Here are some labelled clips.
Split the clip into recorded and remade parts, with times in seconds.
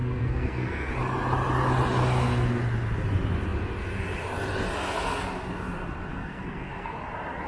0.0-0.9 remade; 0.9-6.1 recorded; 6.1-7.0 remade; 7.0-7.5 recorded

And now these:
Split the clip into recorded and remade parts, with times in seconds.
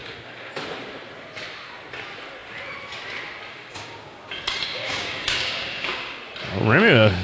0.0-0.6 remade; 0.6-3.5 recorded; 3.5-6.2 remade; 6.2-7.2 recorded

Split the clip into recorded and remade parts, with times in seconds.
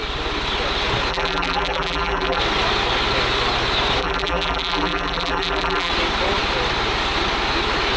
0.0-1.1 recorded; 1.1-2.4 remade; 2.4-4.0 recorded; 4.0-5.9 remade; 5.9-8.0 recorded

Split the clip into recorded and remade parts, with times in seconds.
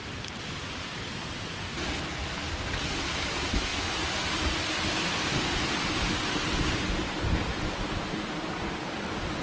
0.0-9.4 recorded